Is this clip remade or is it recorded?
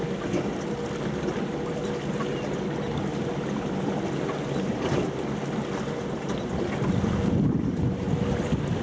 recorded